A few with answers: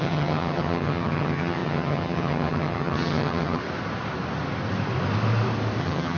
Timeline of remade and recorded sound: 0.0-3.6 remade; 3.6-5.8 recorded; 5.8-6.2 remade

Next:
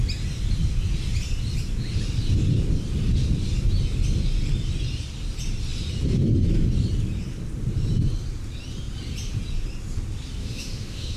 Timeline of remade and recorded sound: 0.0-10.4 recorded; 10.4-11.2 remade

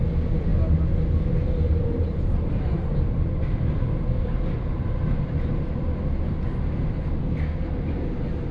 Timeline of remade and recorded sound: 0.0-7.2 recorded; 7.2-7.7 remade; 7.7-8.5 recorded

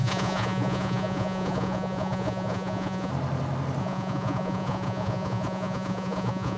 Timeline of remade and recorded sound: 0.0-3.1 remade; 3.1-3.8 recorded; 3.8-6.6 remade

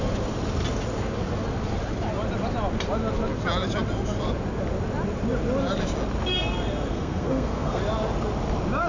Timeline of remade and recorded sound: 0.0-6.9 recorded; 6.9-7.8 remade; 7.8-8.9 recorded

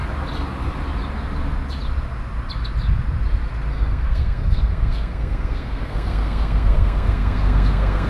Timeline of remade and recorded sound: 0.0-3.7 recorded; 3.7-8.1 remade

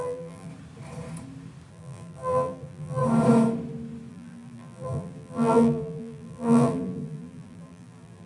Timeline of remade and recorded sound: 0.0-0.5 remade; 0.5-1.7 recorded; 1.7-3.0 remade; 3.0-4.1 recorded; 4.1-8.3 remade